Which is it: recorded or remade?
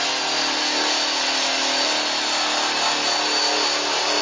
recorded